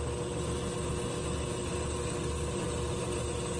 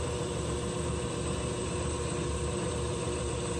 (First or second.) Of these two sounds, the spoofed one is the second